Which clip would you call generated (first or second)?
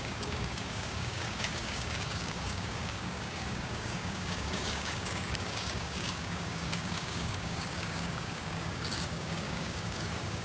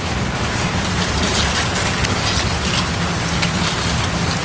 first